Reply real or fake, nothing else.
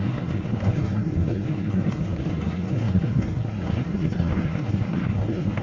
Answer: fake